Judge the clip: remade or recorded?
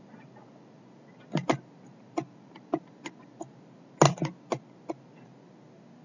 recorded